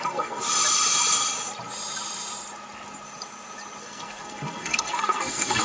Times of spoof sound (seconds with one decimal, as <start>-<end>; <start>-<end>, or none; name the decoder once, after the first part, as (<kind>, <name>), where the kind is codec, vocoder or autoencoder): 0.0-0.4 (codec, SNAC); 3.8-5.6